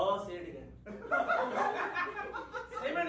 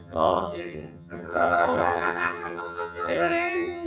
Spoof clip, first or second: second